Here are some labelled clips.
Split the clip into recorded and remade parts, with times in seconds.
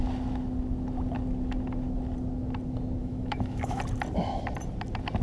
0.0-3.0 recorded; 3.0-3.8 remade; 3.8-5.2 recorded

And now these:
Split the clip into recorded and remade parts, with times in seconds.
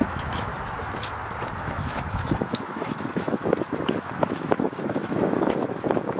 0.0-0.5 remade; 0.5-1.6 recorded; 1.6-6.2 remade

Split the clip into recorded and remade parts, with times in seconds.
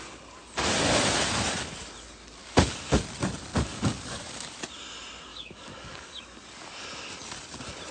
0.0-2.4 recorded; 2.4-3.0 remade; 3.0-3.5 recorded; 3.5-4.6 remade; 4.6-5.3 recorded; 5.3-6.2 remade; 6.2-7.9 recorded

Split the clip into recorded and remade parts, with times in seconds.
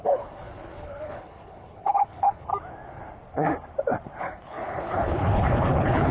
0.0-2.5 remade; 2.5-4.2 recorded; 4.2-6.1 remade